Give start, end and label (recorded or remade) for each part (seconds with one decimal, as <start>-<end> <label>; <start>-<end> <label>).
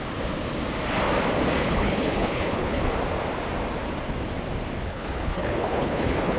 0.0-1.6 recorded; 1.6-2.8 remade; 2.8-4.9 recorded; 4.9-6.4 remade